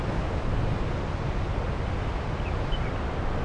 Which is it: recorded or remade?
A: recorded